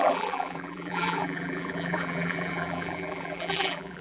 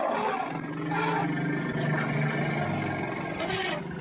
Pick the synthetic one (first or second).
first